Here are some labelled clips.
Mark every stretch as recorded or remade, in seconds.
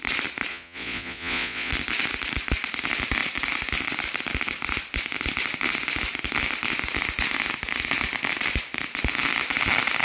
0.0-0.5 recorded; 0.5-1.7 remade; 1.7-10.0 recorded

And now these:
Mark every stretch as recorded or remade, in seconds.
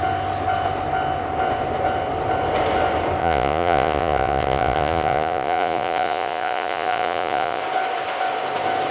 0.0-3.2 recorded; 3.2-7.6 remade; 7.6-8.9 recorded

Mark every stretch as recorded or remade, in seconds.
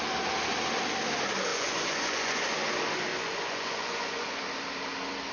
0.0-1.5 recorded; 1.5-2.4 remade; 2.4-3.1 recorded; 3.1-4.4 remade; 4.4-5.3 recorded